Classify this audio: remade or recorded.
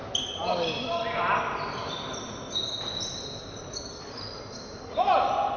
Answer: recorded